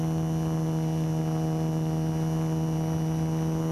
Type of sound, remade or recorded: recorded